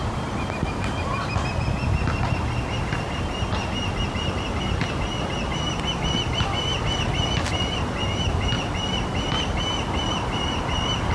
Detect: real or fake real